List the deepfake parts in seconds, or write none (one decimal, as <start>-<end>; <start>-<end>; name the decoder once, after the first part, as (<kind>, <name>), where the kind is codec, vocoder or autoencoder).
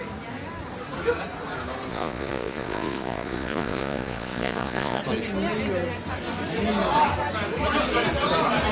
1.9-5.0 (vocoder, Vocos)